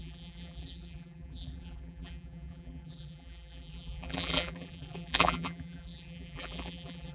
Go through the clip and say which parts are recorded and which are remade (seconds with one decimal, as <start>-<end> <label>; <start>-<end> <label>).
0.0-7.1 remade